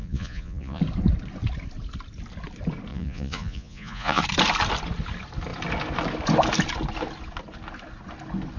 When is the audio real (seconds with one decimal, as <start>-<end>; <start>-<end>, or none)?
0.8-2.9; 4.2-8.6